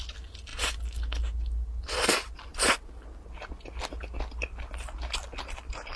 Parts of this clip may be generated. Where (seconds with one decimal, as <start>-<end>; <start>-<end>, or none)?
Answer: none